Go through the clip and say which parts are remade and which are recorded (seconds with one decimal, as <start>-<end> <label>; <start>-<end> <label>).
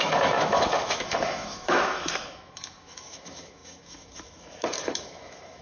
0.0-5.6 remade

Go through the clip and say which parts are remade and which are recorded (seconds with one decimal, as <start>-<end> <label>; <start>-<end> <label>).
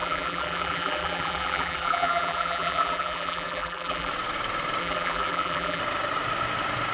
0.0-4.1 remade; 4.1-4.8 recorded; 4.8-5.8 remade; 5.8-6.9 recorded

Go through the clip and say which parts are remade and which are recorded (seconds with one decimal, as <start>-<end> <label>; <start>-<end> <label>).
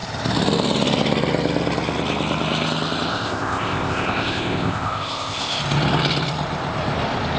0.0-3.1 recorded; 3.1-5.6 remade; 5.6-7.4 recorded